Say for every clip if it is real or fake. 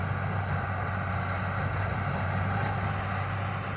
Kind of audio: real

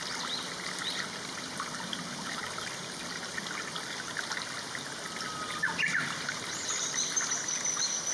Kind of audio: real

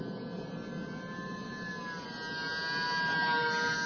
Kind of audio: real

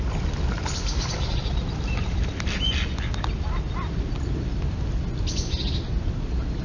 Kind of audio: real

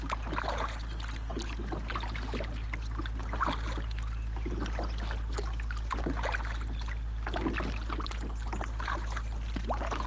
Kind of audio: real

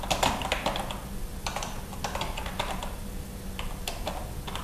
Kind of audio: real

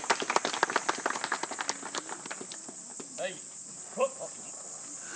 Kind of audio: real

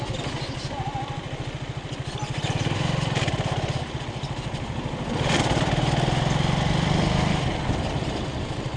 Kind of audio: fake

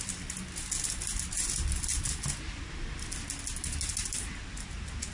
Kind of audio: real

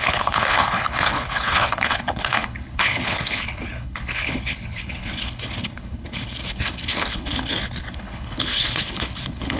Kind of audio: fake